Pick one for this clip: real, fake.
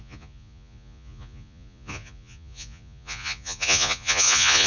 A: fake